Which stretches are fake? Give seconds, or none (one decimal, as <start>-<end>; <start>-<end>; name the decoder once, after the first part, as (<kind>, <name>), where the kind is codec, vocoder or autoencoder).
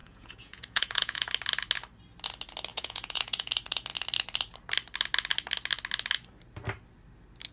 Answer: 0.0-1.3 (vocoder, Vocos); 2.7-3.5